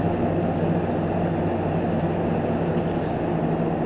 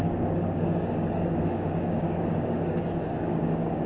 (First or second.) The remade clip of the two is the second